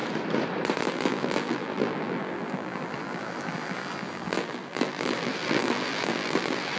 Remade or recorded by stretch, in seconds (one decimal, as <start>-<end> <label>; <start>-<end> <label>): 0.0-0.8 recorded; 0.8-6.8 remade